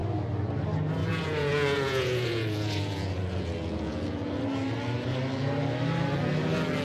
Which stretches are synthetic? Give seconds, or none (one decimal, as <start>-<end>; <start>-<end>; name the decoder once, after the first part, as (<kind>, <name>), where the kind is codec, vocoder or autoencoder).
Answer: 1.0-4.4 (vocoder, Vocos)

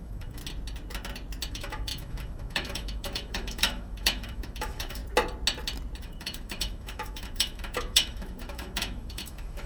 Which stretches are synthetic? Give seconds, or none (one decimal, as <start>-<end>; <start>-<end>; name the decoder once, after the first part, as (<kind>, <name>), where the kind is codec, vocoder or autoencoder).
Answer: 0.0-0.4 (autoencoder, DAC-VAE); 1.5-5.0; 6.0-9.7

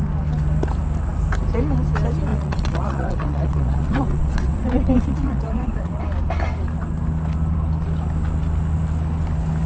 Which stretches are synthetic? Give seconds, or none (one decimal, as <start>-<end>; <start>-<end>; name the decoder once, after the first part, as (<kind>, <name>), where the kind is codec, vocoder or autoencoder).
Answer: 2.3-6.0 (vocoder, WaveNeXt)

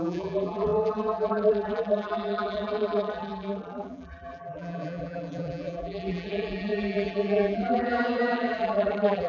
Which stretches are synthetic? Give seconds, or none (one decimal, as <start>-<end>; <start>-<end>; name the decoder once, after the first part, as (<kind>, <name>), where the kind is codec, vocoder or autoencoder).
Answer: 0.0-9.3 (vocoder, BigVGAN v2)

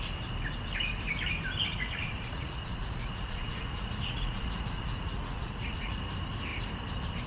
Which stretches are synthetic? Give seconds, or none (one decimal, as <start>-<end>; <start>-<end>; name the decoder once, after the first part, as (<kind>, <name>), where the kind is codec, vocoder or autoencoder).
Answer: 1.7-6.1 (vocoder, Vocos)

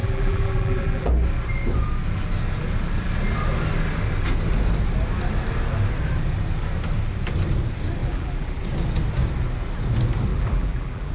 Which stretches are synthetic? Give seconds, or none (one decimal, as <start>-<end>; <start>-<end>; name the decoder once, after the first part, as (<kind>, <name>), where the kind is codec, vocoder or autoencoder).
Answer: 0.0-1.1 (vocoder, BigVGAN v2); 8.0-8.6; 10.3-11.1

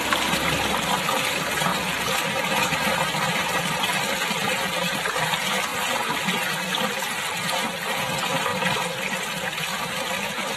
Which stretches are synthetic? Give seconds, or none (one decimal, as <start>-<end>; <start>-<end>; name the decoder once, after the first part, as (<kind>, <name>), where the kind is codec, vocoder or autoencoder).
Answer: 0.0-8.5 (vocoder, BigVGAN v2); 9.8-10.6

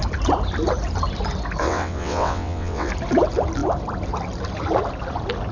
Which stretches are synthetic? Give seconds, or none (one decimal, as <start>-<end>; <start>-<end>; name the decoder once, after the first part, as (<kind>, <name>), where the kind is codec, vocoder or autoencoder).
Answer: 1.6-2.9 (vocoder, WaveNeXt)